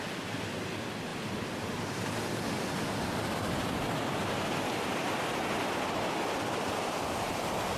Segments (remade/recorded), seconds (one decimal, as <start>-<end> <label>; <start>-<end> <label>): 0.0-7.8 recorded